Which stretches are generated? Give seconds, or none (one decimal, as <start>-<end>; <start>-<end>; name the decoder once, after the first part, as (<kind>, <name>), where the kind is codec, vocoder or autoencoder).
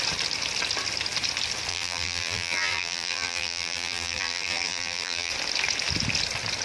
1.7-5.3 (vocoder, BigVGAN v2)